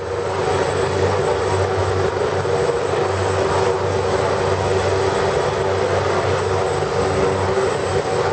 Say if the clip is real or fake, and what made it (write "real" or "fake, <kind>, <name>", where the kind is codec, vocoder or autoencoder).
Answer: real